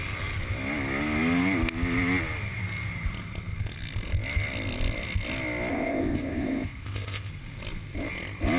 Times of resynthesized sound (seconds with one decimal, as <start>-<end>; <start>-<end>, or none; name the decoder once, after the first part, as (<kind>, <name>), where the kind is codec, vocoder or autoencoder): 5.7-7.3 (codec, ZipCodec)